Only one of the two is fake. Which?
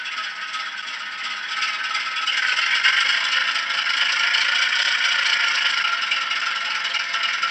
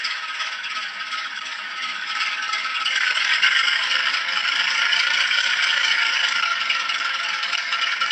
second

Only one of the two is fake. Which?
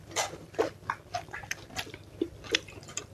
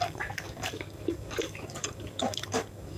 second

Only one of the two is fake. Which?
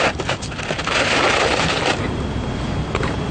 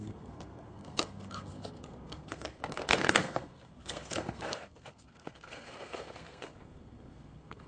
second